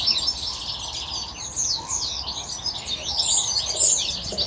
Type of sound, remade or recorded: recorded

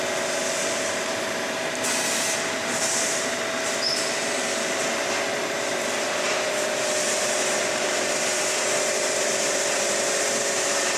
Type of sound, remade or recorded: remade